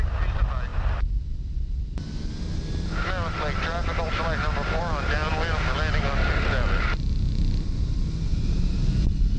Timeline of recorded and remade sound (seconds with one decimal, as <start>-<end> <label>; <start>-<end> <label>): 0.0-9.4 recorded